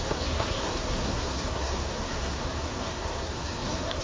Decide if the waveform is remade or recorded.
remade